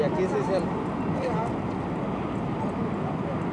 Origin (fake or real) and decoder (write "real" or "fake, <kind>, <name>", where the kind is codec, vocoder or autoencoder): real